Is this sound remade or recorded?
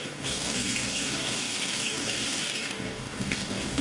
remade